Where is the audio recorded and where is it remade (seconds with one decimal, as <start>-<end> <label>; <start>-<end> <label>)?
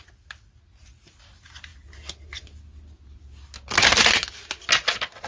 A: 0.0-5.3 recorded